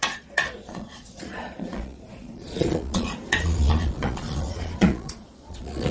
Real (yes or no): no